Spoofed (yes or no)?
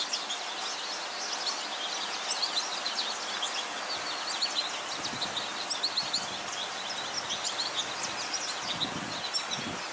no